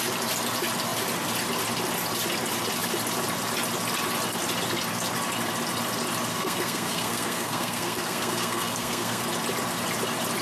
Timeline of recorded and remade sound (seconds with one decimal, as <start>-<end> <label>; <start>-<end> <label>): 0.0-6.3 recorded; 6.3-9.2 remade; 9.2-10.4 recorded